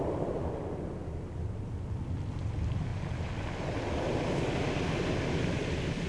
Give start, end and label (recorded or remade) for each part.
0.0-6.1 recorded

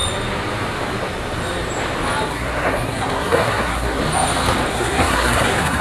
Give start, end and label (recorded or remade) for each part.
0.0-2.3 recorded; 2.3-4.0 remade; 4.0-4.7 recorded; 4.7-5.8 remade

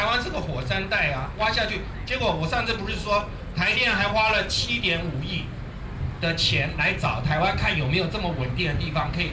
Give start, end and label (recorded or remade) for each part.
0.0-9.3 recorded

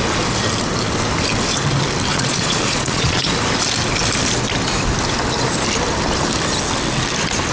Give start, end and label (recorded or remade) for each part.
0.0-2.1 recorded; 2.1-3.3 remade; 3.3-7.5 recorded